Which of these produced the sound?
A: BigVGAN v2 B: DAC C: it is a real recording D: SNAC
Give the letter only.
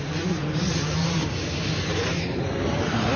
A